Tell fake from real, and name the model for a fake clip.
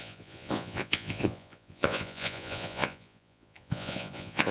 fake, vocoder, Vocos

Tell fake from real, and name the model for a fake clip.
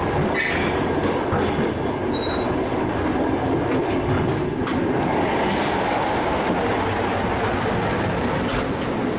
real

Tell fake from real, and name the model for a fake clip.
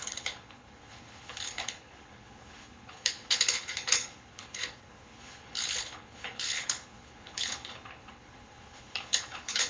fake, codec, HILCodec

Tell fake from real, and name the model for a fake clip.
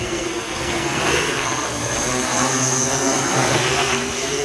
fake, codec, SNAC